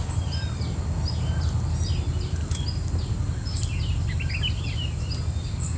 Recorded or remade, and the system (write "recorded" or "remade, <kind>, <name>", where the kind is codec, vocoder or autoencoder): recorded